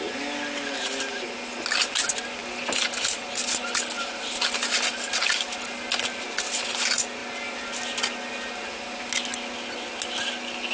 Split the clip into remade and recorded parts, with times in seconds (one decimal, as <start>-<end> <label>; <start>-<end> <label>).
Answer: 0.0-10.7 recorded